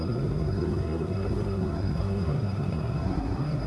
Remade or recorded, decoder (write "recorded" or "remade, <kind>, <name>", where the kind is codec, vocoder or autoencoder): remade, codec, SNAC